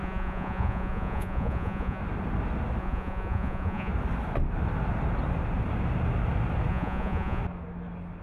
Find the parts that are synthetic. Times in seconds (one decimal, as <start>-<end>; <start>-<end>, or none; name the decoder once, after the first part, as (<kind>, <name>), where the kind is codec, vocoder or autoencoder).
0.0-2.0 (vocoder, Vocos); 2.8-3.9; 6.7-7.4